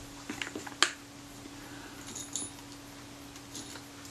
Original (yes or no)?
yes